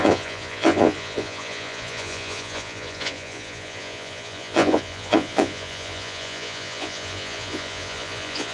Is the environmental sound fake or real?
fake